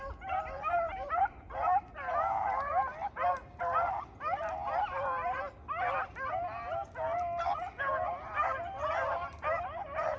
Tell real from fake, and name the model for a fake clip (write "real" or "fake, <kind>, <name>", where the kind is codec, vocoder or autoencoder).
real